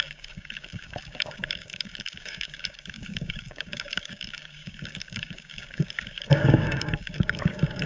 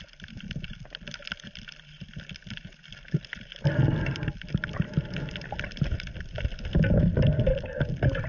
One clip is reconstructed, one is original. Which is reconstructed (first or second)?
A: first